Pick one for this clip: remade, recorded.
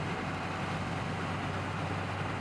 recorded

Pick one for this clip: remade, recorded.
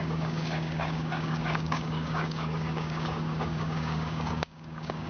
remade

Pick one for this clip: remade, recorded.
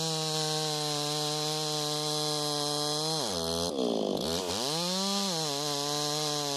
recorded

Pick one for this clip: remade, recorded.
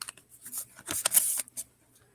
recorded